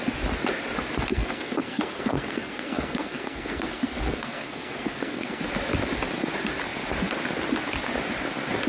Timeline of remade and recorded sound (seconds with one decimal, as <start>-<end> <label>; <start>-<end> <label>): 0.0-1.1 recorded; 1.1-5.4 remade; 5.4-8.7 recorded